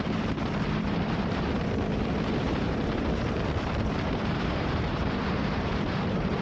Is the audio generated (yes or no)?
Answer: yes